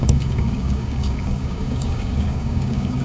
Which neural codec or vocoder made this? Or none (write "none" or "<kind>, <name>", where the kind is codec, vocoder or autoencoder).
codec, DAC